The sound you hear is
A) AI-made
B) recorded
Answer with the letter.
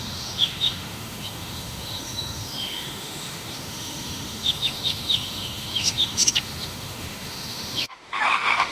A